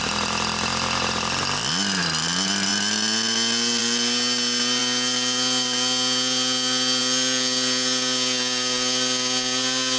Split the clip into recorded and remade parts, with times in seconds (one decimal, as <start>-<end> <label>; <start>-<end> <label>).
0.0-10.0 recorded